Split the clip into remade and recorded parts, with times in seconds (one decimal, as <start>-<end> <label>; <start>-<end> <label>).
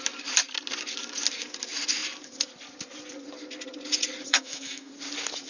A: 0.0-4.3 recorded; 4.3-4.9 remade; 4.9-5.5 recorded